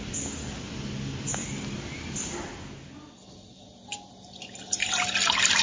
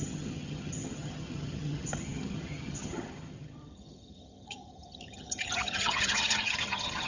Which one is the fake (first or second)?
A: second